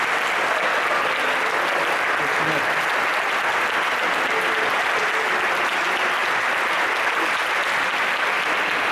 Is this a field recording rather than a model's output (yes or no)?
yes